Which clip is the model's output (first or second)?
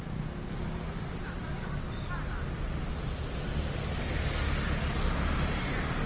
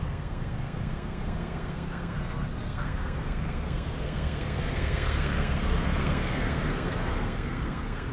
second